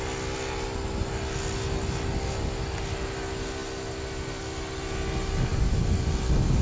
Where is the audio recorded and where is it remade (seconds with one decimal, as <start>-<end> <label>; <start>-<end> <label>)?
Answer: 0.0-6.6 recorded